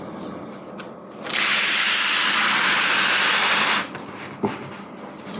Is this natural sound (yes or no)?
yes